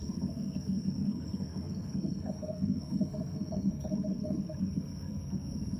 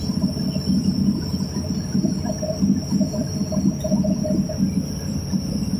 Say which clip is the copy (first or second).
first